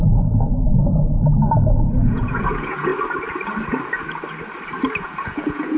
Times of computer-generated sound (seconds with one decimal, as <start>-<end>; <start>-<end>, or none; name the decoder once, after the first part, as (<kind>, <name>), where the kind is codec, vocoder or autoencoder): 0.0-2.9 (vocoder, Vocos); 5.0-5.8

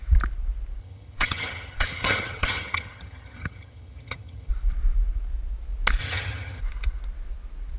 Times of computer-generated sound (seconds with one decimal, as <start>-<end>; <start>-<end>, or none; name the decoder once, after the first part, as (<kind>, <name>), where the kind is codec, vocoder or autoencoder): 0.8-4.5 (vocoder, HiFi-GAN); 6.0-6.6